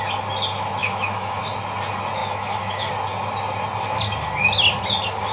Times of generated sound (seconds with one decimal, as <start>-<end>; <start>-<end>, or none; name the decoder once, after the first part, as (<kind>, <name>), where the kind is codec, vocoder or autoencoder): 0.8-1.4 (autoencoder, DAC-VAE); 2.2-2.9